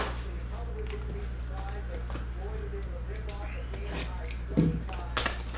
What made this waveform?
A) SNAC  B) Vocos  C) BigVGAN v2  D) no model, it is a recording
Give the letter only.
D